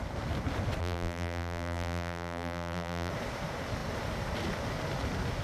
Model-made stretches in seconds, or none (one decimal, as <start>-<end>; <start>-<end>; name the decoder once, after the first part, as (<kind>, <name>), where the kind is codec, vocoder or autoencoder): 0.8-3.1 (vocoder, BigVGAN v2)